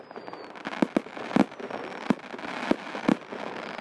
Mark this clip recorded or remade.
recorded